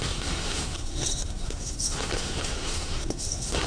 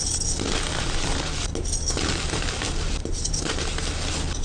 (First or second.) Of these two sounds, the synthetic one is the first